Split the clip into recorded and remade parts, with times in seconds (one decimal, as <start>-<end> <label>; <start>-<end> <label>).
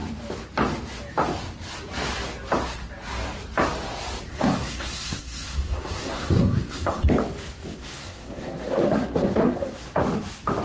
0.0-4.3 recorded; 4.3-7.1 remade; 7.1-7.8 recorded; 7.8-10.0 remade; 10.0-10.6 recorded